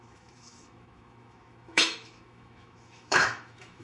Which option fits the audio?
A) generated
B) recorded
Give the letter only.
A